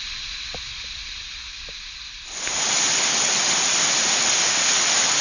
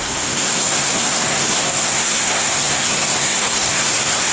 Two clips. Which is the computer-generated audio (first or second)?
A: second